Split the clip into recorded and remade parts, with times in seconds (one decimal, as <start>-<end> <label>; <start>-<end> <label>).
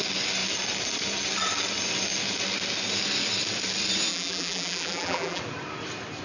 0.0-4.1 recorded; 4.1-5.4 remade; 5.4-6.2 recorded